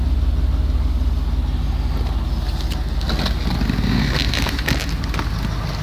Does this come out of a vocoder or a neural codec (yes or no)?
no